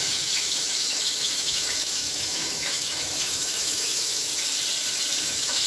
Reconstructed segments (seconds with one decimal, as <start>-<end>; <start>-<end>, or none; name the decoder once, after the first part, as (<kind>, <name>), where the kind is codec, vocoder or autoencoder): 0.0-4.3 (autoencoder, DAC-VAE); 5.2-5.7